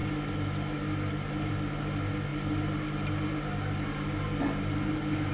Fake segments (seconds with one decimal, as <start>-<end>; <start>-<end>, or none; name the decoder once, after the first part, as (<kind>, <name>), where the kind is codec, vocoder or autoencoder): none